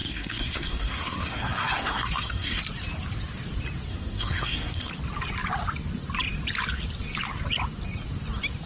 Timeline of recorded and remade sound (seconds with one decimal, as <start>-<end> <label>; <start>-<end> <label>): 0.0-2.6 remade; 2.6-3.9 recorded; 3.9-4.9 remade; 4.9-8.7 recorded